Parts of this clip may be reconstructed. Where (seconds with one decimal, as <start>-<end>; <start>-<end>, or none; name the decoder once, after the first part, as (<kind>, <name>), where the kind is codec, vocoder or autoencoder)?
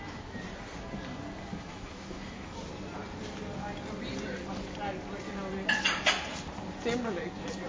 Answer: 1.5-2.6 (autoencoder, DAC-VAE)